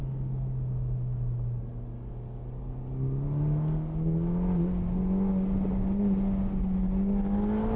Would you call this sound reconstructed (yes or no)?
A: no